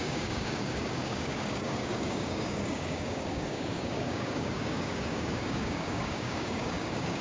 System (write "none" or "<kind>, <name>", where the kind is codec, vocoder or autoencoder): codec, DAC